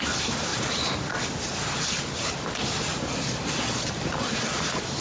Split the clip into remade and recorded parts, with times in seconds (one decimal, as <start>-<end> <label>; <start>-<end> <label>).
0.0-5.0 recorded